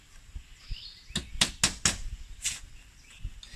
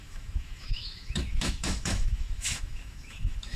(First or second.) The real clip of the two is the first